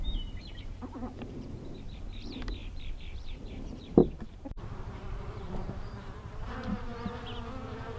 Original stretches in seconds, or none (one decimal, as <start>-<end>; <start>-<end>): 6.9-8.0